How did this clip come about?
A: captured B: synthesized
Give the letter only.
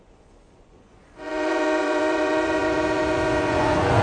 B